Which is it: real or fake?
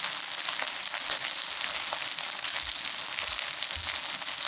real